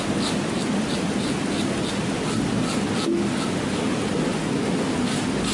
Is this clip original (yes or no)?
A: yes